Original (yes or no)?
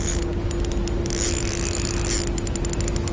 yes